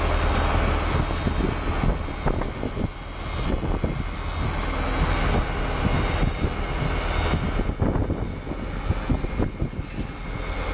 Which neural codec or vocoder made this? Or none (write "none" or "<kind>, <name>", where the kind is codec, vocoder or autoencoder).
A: none